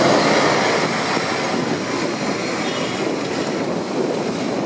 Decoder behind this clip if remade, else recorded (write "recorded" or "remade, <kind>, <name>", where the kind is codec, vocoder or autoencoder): recorded